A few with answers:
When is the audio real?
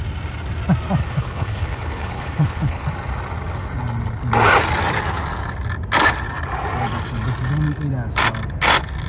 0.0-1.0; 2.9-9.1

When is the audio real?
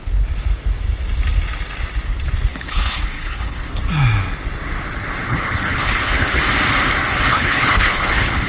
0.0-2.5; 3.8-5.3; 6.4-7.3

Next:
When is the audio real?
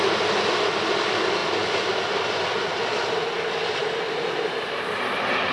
0.0-5.5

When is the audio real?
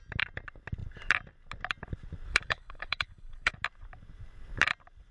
0.0-2.3; 3.5-5.1